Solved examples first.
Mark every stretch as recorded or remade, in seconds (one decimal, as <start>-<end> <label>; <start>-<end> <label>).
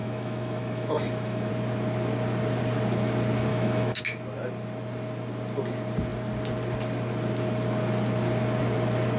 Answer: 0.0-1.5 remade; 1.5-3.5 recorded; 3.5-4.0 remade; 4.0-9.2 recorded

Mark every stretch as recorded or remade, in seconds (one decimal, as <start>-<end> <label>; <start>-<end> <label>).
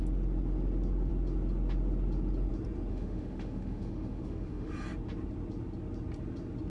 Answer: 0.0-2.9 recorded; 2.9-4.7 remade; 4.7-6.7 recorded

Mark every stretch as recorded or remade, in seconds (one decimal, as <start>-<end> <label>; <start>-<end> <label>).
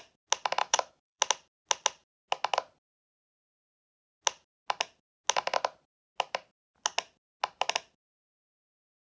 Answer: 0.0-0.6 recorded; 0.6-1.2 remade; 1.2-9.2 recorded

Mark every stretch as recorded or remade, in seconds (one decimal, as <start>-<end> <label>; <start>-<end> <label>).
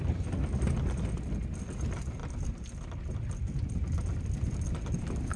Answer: 0.0-5.4 recorded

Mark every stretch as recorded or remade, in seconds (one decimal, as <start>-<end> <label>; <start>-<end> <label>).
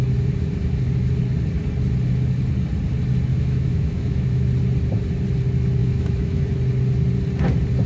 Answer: 0.0-3.3 recorded; 3.3-4.5 remade; 4.5-5.8 recorded; 5.8-6.4 remade; 6.4-7.9 recorded